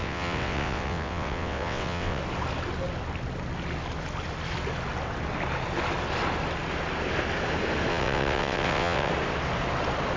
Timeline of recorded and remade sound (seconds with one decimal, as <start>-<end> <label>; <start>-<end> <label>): 0.0-2.2 remade; 2.2-7.9 recorded; 7.9-9.1 remade; 9.1-10.2 recorded